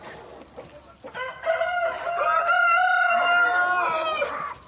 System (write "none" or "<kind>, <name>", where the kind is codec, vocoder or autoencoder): none